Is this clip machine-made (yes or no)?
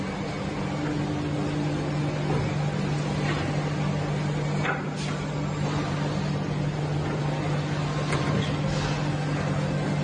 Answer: no